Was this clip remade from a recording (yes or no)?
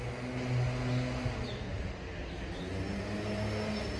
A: no